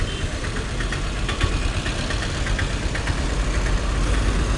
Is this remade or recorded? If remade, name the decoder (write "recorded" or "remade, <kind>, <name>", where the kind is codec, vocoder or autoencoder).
recorded